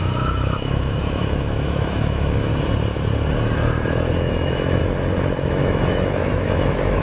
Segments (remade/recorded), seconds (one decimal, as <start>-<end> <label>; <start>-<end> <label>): 0.0-2.5 remade; 2.5-4.3 recorded; 4.3-4.8 remade; 4.8-5.5 recorded; 5.5-7.0 remade